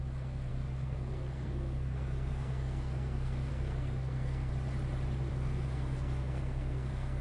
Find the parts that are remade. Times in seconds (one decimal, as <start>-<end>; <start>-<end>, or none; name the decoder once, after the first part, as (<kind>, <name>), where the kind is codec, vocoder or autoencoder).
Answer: 0.0-4.5 (codec, SNAC); 5.3-7.2